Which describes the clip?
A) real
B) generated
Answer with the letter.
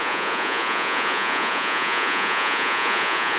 B